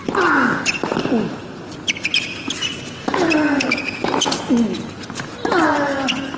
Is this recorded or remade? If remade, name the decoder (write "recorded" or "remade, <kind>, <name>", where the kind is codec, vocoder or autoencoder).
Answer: recorded